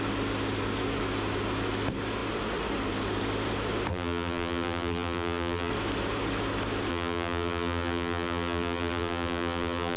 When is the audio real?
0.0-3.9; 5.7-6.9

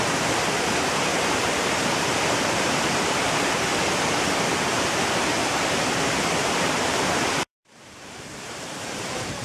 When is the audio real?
3.7-6.4

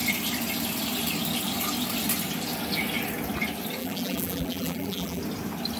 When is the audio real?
0.0-3.8; 5.2-5.8

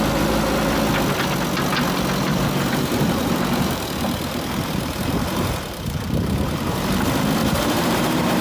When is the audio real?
0.0-2.2; 7.0-7.4

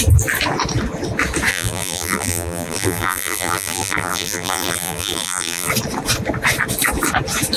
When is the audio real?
0.0-1.5; 5.7-7.6

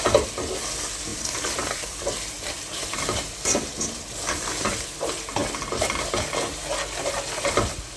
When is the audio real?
0.0-1.1; 4.9-8.0

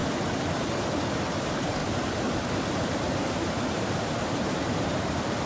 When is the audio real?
0.0-1.4

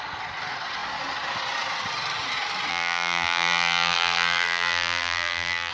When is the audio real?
0.0-2.7